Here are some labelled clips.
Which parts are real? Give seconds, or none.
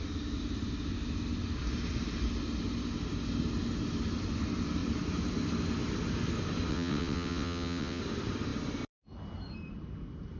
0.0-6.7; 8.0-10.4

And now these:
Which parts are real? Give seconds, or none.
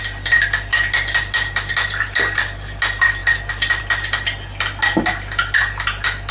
0.0-6.3